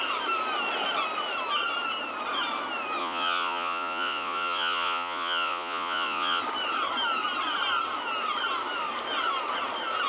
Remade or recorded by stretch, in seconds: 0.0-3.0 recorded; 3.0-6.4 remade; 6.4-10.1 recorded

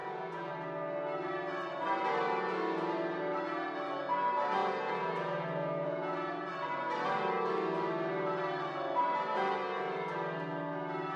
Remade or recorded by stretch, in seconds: 0.0-0.5 remade; 0.5-4.6 recorded; 4.6-6.5 remade; 6.5-11.2 recorded